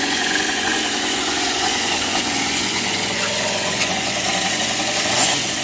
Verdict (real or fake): fake